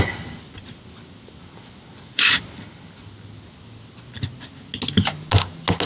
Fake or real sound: real